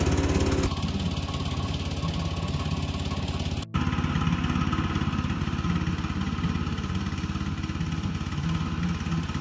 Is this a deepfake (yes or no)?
no